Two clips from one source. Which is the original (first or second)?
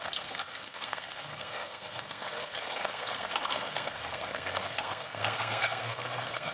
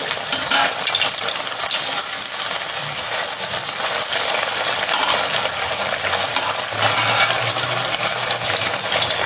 second